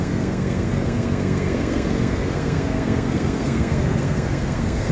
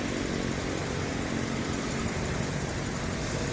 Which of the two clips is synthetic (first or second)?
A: first